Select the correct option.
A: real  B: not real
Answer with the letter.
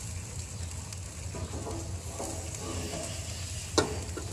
A